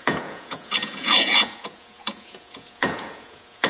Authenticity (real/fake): fake